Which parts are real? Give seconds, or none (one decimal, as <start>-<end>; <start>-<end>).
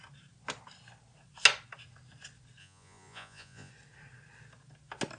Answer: 0.0-2.6; 3.7-5.2